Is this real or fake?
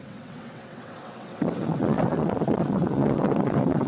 fake